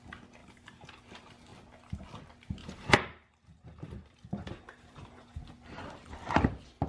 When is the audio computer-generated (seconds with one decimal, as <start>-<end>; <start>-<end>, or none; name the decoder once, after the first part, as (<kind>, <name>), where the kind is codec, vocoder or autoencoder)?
0.4-1.0 (vocoder, BigVGAN v2); 2.6-5.4

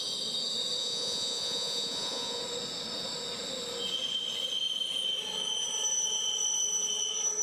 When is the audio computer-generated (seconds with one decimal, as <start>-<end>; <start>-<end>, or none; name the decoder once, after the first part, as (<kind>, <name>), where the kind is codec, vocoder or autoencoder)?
0.8-2.4 (vocoder, Vocos)

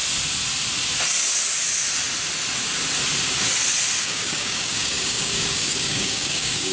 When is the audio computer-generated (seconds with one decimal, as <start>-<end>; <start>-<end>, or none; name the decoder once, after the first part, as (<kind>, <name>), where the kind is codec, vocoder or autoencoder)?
4.0-6.7 (codec, DAC)

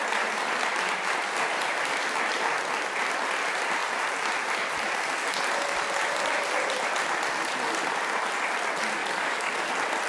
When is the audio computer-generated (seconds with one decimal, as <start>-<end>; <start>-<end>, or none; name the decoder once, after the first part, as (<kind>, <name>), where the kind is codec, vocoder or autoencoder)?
9.0-9.7 (codec, DAC)

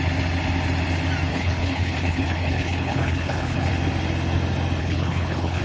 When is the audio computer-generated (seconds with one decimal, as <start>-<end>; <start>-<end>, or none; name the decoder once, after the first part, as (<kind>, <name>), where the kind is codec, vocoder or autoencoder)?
1.3-3.7 (codec, HILCodec); 4.8-5.6

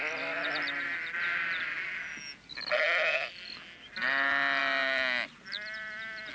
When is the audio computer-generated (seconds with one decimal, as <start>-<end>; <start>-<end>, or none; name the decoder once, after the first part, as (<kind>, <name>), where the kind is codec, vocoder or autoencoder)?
none

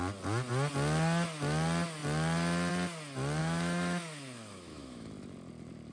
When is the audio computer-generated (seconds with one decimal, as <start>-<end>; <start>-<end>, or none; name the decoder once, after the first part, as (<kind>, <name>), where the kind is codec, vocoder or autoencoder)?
3.4-5.1 (autoencoder, DAC-VAE)